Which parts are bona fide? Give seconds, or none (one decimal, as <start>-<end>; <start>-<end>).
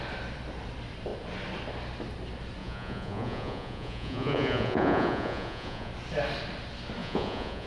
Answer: 0.0-2.6; 5.9-7.0